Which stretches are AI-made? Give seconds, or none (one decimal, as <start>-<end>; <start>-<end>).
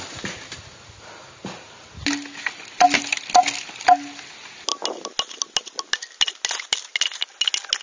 none